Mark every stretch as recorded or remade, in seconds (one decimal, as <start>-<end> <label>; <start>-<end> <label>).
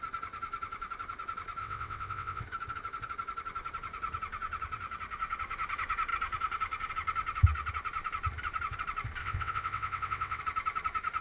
0.0-1.6 recorded; 1.6-2.4 remade; 2.4-9.2 recorded; 9.2-10.4 remade; 10.4-11.2 recorded